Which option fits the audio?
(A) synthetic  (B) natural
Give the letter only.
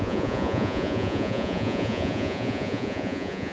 A